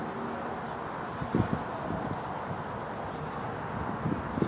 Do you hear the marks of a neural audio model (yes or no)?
no